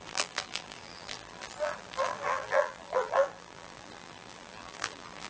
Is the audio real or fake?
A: fake